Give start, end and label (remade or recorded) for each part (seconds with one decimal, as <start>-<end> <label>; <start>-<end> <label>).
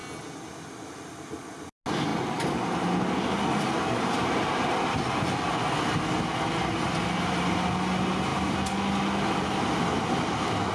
0.0-10.7 recorded